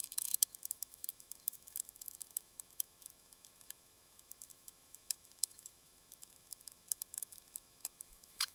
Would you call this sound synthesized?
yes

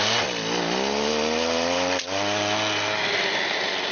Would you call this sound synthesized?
no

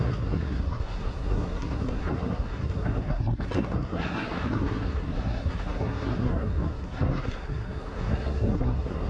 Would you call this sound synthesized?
yes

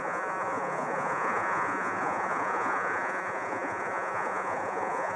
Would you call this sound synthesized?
yes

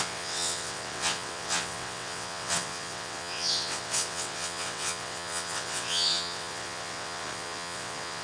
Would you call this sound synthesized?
yes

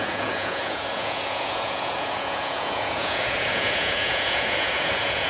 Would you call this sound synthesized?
yes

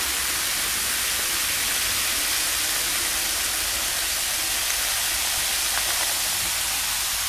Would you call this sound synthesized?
no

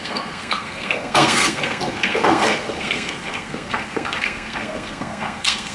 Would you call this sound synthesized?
yes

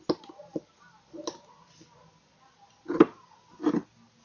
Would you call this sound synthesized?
no